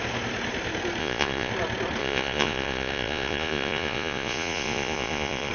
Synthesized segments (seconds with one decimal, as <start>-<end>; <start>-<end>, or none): 1.0-1.5; 2.0-5.5